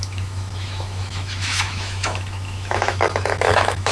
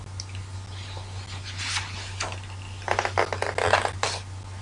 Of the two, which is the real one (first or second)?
second